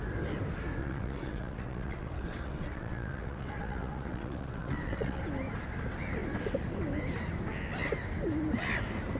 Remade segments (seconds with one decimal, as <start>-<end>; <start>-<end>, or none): 0.8-5.2